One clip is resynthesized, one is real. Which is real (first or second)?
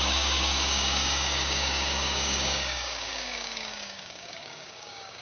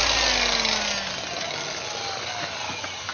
second